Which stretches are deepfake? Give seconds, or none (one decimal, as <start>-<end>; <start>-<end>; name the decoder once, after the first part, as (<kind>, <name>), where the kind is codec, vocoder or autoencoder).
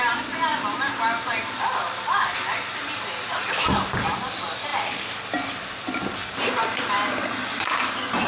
none